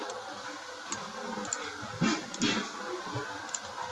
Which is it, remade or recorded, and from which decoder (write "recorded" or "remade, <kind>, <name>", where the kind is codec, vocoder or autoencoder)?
recorded